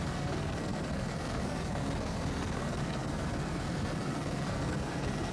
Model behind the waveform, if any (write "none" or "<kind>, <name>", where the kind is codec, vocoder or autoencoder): codec, SNAC